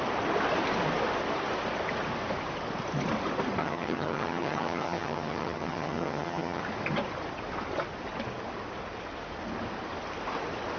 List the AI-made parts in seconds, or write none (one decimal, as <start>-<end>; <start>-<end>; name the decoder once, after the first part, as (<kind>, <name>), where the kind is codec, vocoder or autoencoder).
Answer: 3.6-6.6 (vocoder, HiFi-GAN)